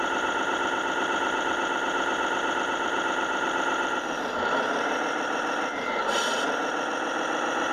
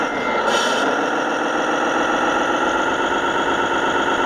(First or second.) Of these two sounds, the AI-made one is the first